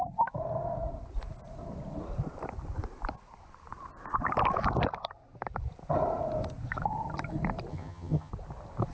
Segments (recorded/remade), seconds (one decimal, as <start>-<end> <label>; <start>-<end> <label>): 0.0-7.7 recorded; 7.7-8.3 remade; 8.3-8.9 recorded